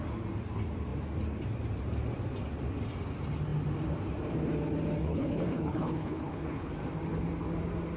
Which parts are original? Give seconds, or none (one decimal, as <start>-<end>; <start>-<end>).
0.0-5.0; 6.7-8.0